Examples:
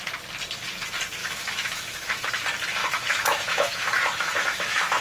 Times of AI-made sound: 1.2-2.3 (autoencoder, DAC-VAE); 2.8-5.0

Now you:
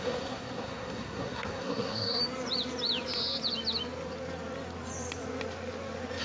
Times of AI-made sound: 0.0-2.2 (codec, SNAC)

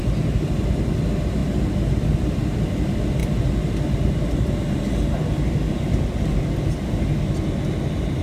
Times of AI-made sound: none

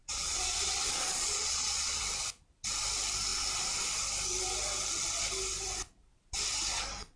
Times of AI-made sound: 0.0-2.0 (vocoder, Vocos)